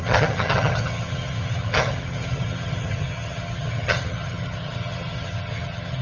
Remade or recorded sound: remade